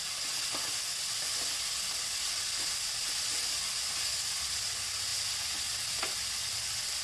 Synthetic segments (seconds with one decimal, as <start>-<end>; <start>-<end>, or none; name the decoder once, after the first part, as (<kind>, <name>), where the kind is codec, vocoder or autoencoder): none